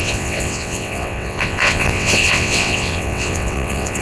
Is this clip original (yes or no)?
no